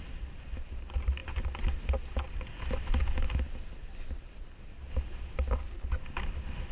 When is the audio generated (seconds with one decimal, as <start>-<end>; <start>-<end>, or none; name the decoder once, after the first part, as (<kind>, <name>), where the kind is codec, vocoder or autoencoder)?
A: none

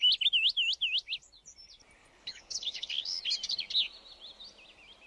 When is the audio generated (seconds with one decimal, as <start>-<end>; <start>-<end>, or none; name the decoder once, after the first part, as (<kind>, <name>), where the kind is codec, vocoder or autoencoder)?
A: 2.0-3.2 (codec, HILCodec)

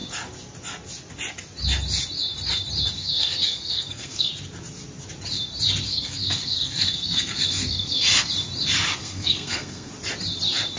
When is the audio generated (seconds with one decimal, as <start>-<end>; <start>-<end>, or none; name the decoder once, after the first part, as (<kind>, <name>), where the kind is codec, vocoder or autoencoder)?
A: 3.0-4.3 (codec, SNAC); 5.9-8.3; 9.0-9.9

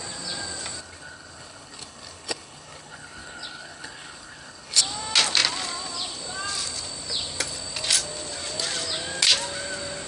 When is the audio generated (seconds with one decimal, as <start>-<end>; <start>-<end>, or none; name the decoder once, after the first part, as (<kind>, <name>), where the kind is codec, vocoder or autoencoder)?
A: 0.8-4.8 (codec, HILCodec)